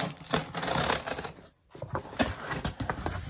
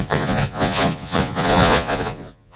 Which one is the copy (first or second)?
second